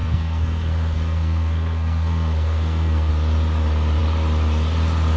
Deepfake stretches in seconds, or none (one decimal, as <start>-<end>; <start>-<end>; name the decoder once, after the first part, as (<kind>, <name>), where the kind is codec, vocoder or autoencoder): 0.0-3.1 (codec, SNAC)